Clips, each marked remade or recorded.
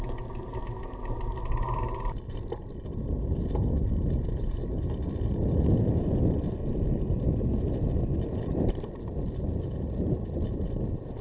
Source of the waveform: recorded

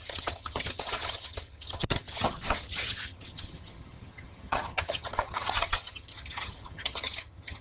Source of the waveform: remade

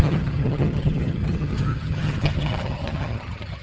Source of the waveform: remade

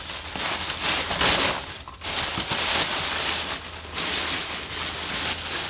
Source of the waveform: recorded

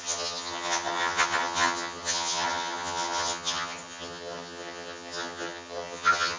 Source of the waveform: remade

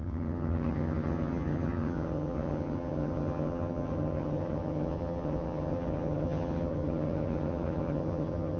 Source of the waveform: remade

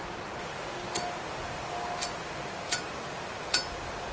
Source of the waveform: recorded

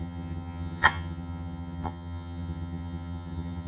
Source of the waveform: remade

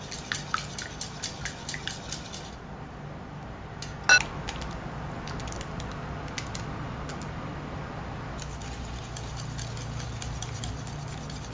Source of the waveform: recorded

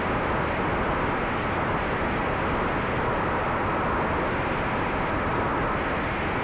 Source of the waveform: recorded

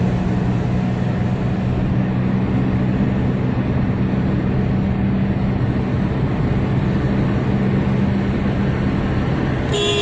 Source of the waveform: recorded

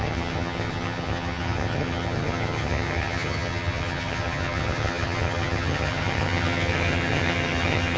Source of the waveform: remade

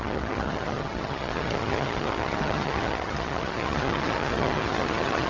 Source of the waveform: remade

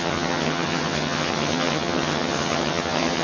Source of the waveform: remade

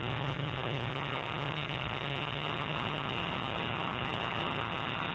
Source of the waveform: remade